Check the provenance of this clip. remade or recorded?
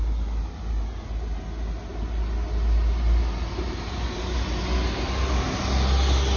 recorded